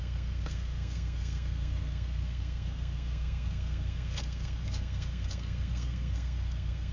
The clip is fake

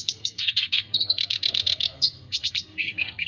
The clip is fake